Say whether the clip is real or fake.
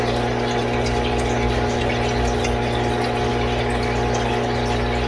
real